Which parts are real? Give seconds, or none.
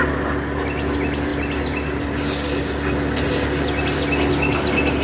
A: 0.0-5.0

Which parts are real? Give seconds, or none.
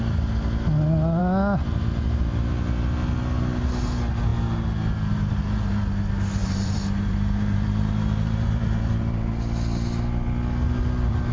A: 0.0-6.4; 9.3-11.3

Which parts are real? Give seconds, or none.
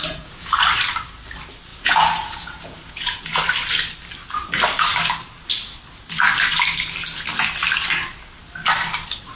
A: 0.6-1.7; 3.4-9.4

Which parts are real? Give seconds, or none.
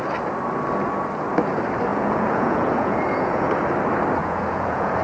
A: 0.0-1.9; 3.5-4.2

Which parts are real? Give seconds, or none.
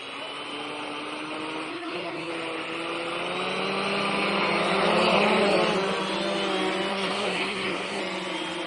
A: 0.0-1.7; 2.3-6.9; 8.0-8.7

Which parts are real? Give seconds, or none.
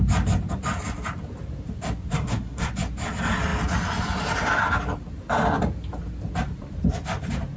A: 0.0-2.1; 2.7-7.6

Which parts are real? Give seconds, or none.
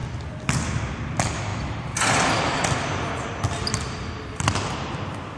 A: 0.0-5.4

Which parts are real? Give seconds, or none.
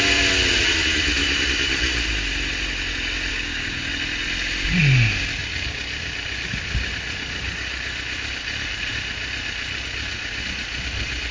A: 0.0-3.3; 3.9-11.3